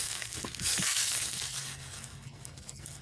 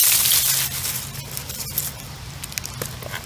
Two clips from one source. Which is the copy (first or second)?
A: first